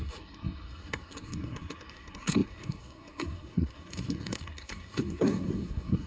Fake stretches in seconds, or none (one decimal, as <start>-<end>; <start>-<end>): 0.0-6.1